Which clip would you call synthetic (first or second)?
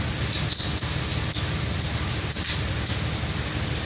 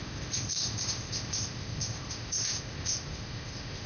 second